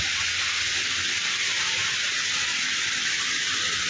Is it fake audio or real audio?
real